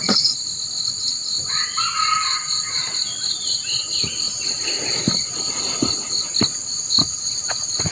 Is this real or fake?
real